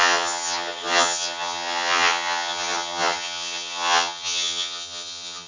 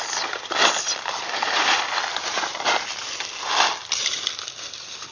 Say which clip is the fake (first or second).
first